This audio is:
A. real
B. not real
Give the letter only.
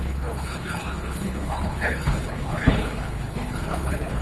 B